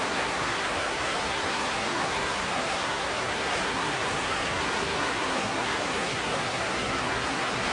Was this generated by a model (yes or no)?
yes